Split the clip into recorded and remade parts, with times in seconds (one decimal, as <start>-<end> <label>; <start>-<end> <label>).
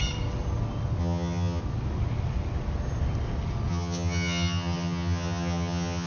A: 0.0-1.0 recorded; 1.0-1.6 remade; 1.6-3.7 recorded; 3.7-6.1 remade